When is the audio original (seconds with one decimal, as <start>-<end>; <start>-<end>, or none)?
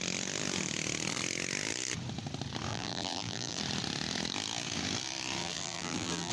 0.0-2.7; 3.6-5.4